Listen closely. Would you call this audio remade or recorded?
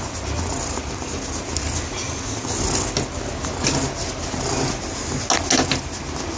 recorded